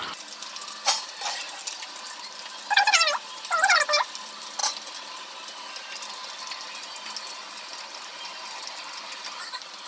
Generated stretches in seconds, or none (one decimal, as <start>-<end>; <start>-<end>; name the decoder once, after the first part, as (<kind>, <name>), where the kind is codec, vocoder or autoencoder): none

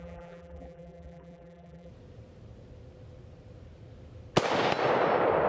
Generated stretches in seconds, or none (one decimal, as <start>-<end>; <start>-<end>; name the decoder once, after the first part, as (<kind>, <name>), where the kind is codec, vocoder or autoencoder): 0.0-1.9 (vocoder, BigVGAN v2)

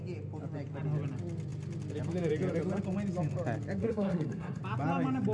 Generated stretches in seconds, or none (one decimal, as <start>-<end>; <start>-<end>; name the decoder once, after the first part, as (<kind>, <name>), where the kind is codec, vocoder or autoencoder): 3.8-4.6 (codec, SNAC)

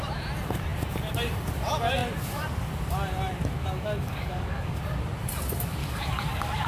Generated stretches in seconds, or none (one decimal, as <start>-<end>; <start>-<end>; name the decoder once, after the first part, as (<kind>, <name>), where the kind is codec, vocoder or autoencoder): 3.6-4.8 (codec, DAC); 5.8-6.7